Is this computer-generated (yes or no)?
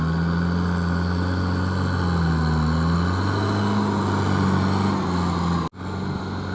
no